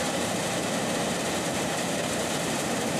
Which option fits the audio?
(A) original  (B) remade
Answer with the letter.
B